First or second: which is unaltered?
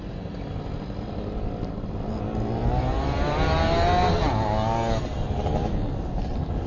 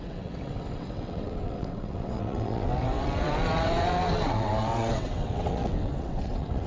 first